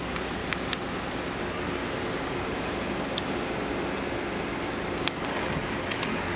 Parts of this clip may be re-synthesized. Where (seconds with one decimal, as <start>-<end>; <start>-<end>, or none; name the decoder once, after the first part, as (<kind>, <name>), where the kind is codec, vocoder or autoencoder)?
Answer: 0.0-0.4 (codec, DAC); 1.4-1.8; 5.2-6.4